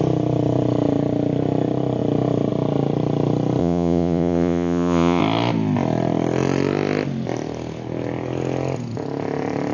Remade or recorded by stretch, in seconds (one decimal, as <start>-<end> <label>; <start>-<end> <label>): 0.0-3.6 recorded; 3.6-5.2 remade; 5.2-9.7 recorded

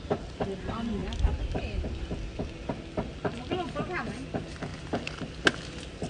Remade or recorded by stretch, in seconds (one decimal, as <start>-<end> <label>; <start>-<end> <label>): 0.0-6.1 recorded

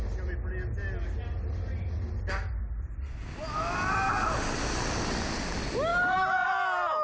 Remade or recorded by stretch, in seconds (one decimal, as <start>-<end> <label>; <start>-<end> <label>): 0.0-5.9 recorded; 5.9-6.5 remade; 6.5-7.0 recorded

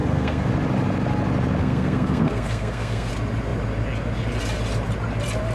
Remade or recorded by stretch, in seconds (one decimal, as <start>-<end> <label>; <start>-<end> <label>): 0.0-0.5 remade; 0.5-1.6 recorded; 1.6-3.1 remade; 3.1-5.5 recorded

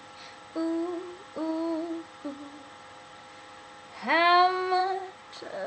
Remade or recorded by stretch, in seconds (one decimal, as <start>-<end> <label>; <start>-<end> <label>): 0.0-4.8 recorded; 4.8-5.3 remade; 5.3-5.7 recorded